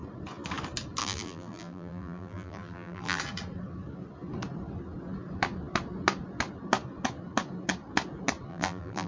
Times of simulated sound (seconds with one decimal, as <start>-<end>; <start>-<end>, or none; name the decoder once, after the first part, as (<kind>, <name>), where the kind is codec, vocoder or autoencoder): 1.0-3.2 (vocoder, BigVGAN v2); 8.5-9.1